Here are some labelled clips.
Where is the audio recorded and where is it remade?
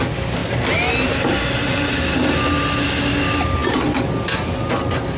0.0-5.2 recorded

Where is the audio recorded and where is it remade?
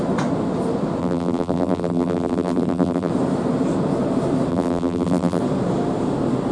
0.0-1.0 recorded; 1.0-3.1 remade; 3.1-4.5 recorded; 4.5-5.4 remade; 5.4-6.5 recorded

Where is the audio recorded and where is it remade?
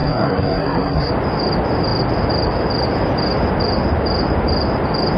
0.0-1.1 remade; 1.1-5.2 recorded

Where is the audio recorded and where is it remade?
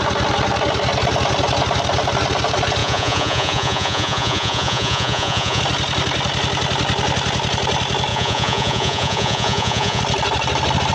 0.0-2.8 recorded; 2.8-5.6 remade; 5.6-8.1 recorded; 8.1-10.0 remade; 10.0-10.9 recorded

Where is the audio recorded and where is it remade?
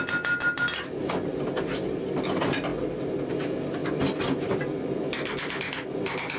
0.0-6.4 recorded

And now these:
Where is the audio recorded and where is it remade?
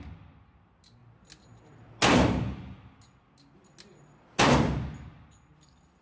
0.0-6.0 recorded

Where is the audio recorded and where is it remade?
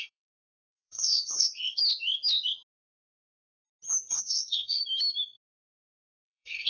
0.0-1.8 remade; 1.8-4.1 recorded; 4.1-4.8 remade; 4.8-6.0 recorded; 6.0-6.7 remade